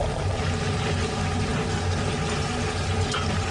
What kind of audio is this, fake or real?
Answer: real